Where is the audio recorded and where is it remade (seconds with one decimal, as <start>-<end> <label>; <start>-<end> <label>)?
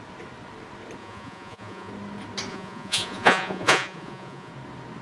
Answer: 0.0-1.0 recorded; 1.0-1.9 remade; 1.9-2.5 recorded; 2.5-4.5 remade; 4.5-5.0 recorded